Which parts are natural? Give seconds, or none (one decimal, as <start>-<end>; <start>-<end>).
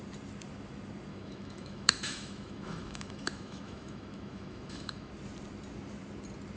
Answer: 0.0-1.1; 5.1-6.6